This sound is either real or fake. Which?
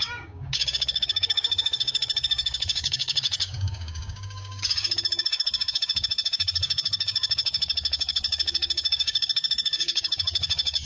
fake